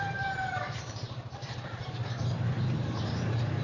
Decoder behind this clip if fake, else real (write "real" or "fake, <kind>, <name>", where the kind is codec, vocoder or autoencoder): fake, vocoder, BigVGAN v2